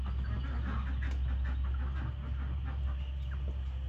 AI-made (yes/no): no